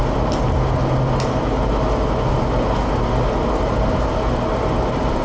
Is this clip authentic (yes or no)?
yes